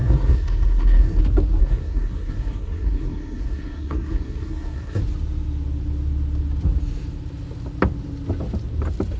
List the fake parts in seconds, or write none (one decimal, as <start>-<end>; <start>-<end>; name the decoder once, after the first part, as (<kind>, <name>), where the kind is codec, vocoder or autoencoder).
0.0-1.2 (codec, SNAC); 1.6-5.0